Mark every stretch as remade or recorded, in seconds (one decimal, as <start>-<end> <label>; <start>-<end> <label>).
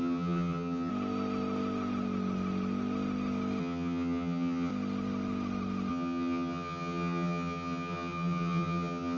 0.0-0.9 remade; 0.9-3.6 recorded; 3.6-4.7 remade; 4.7-5.9 recorded; 5.9-9.2 remade